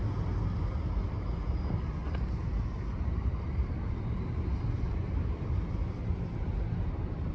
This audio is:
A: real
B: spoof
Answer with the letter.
A